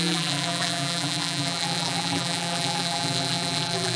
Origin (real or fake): fake